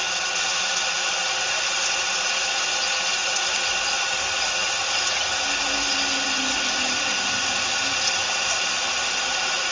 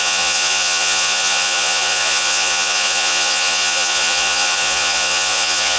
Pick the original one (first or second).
first